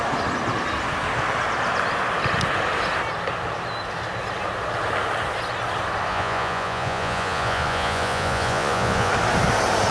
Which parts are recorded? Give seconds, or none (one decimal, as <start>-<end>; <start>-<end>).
0.0-6.1; 9.1-9.9